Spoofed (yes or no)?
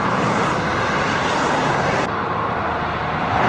no